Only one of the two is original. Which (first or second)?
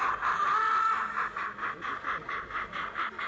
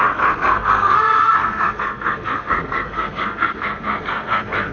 first